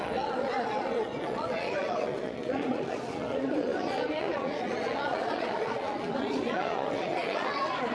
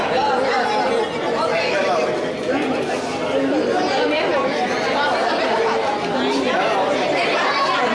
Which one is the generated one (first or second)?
first